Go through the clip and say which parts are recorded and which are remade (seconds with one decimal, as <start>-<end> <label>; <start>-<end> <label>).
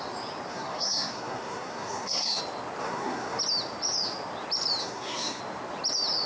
0.0-0.5 recorded; 0.5-2.4 remade; 2.4-2.8 recorded; 2.8-3.4 remade; 3.4-4.8 recorded; 4.8-5.4 remade; 5.4-6.3 recorded